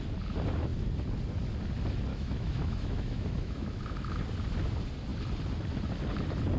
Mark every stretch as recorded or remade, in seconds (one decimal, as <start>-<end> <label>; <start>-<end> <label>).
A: 0.0-2.1 recorded; 2.1-4.2 remade; 4.2-6.6 recorded